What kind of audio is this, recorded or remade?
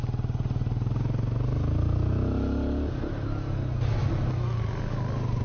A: recorded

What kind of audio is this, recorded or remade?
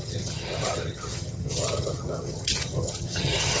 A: remade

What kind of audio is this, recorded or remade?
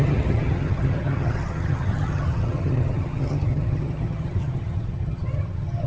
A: remade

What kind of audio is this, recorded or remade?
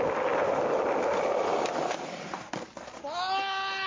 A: recorded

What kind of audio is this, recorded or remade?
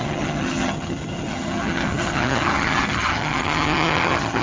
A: remade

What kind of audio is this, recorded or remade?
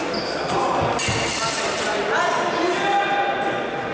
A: recorded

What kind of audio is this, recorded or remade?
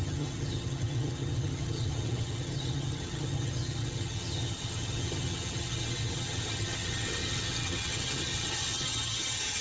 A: remade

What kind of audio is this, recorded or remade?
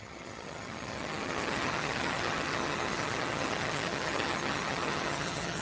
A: remade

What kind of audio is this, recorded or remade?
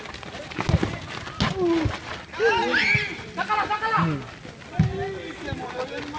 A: recorded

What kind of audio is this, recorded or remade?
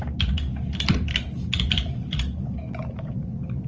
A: recorded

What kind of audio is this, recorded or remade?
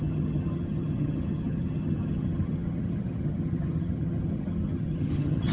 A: remade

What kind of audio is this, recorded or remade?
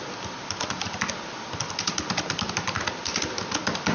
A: recorded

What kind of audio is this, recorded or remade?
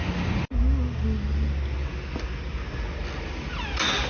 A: recorded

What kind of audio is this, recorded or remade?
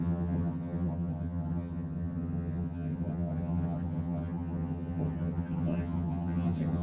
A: remade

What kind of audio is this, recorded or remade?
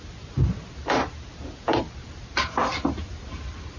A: recorded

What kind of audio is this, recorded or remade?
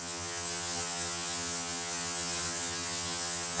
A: remade